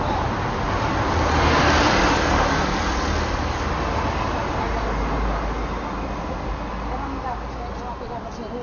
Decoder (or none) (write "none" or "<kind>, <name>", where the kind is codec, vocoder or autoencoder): none